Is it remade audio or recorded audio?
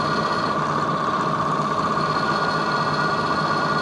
recorded